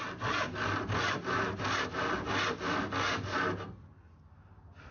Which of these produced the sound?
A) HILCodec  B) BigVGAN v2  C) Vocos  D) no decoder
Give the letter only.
D